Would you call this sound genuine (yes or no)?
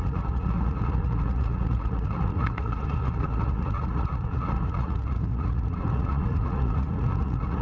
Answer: no